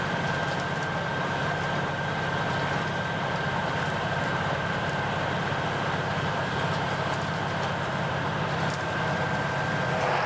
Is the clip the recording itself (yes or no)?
no